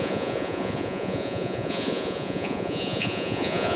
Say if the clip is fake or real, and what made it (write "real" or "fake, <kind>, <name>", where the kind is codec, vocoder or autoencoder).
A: fake, vocoder, Vocos